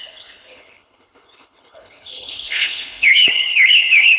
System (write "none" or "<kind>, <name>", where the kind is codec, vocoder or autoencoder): codec, HILCodec